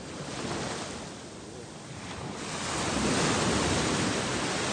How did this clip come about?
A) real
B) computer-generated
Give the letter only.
A